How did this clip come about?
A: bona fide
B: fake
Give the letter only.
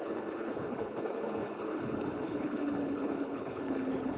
B